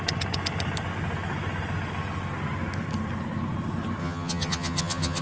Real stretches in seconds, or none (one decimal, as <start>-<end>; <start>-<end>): 0.0-4.0